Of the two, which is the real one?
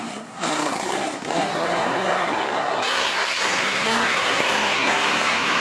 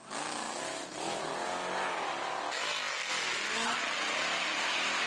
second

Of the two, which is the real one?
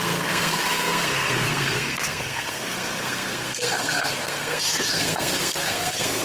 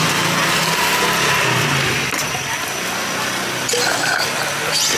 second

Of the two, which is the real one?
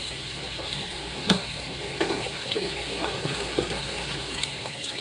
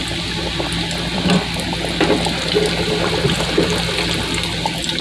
second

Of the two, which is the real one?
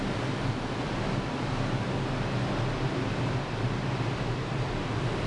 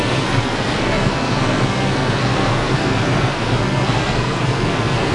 first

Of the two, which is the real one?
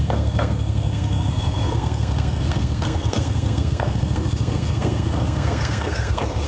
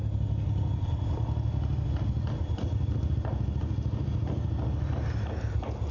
second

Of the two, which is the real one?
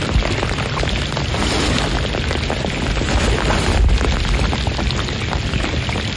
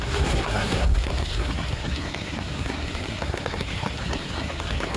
first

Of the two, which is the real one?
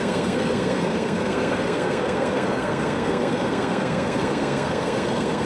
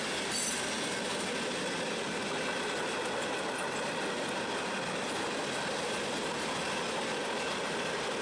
second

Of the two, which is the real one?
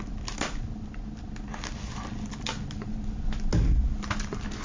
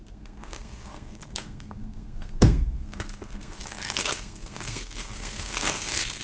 first